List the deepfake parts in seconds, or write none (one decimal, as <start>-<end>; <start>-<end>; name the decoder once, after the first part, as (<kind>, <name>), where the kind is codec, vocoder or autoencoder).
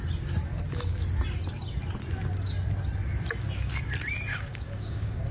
4.3-5.3 (codec, DAC)